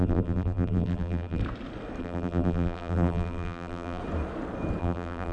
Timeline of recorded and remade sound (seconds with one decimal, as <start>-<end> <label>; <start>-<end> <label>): 0.0-1.4 remade; 1.4-2.0 recorded; 2.0-4.0 remade; 4.0-4.8 recorded; 4.8-5.3 remade